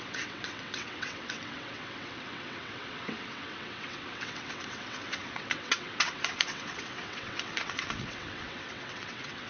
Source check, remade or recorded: remade